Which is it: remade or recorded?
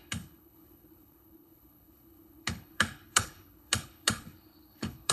remade